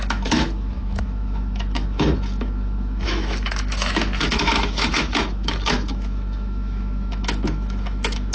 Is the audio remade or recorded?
remade